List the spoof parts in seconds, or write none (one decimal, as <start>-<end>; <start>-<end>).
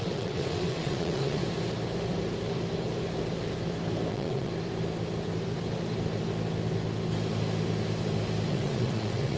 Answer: 0.0-1.4; 4.1-4.5; 8.5-9.4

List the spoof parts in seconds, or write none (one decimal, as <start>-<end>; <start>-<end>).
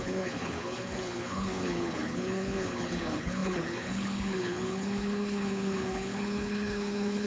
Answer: 0.0-7.3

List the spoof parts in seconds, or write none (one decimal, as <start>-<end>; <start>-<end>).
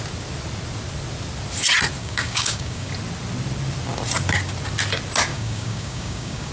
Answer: 2.0-2.9; 5.3-6.5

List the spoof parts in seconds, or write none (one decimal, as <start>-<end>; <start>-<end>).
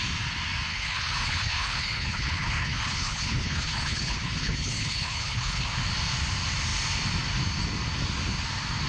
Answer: 0.7-5.7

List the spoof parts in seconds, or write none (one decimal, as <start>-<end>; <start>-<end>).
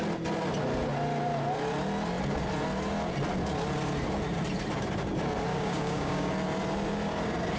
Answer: 5.5-6.3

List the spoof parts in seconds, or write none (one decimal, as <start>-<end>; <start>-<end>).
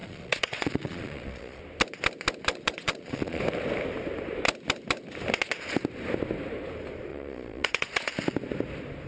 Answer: 0.0-1.6; 2.5-3.4; 7.1-8.1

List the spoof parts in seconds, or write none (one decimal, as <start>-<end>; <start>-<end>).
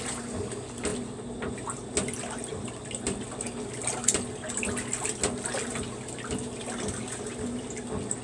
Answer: none